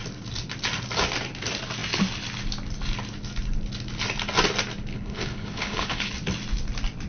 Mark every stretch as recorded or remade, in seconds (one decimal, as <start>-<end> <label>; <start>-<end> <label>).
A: 0.0-4.9 recorded; 4.9-6.1 remade; 6.1-7.1 recorded